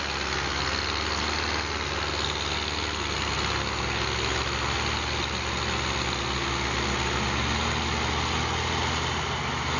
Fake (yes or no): no